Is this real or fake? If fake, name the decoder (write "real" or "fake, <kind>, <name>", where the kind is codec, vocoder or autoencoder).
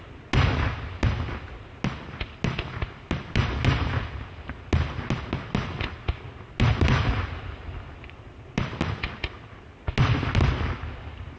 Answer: real